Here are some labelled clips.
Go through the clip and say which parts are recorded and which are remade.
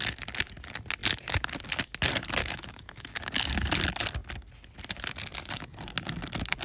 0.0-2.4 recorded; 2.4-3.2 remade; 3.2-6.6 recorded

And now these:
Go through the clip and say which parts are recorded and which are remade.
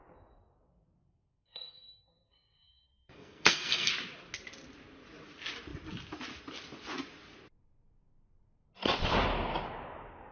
0.0-1.3 recorded; 1.3-3.9 remade; 3.9-10.3 recorded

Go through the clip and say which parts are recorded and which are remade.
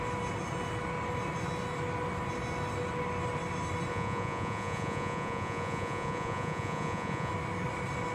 0.0-3.9 recorded; 3.9-7.3 remade; 7.3-8.1 recorded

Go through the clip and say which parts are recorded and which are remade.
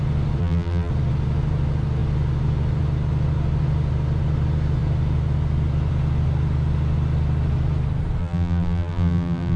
0.0-0.4 recorded; 0.4-0.9 remade; 0.9-8.2 recorded; 8.2-9.6 remade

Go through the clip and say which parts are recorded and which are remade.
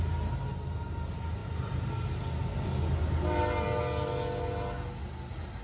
0.0-5.6 recorded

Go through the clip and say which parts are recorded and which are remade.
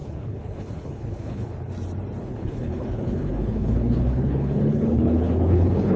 0.0-1.7 remade; 1.7-2.2 recorded; 2.2-6.0 remade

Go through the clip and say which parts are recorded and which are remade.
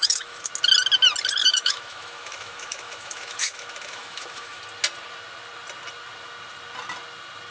0.0-0.5 remade; 0.5-1.4 recorded; 1.4-4.6 remade; 4.6-7.5 recorded